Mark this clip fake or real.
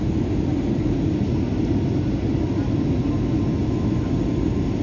real